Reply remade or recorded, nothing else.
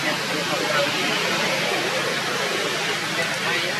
recorded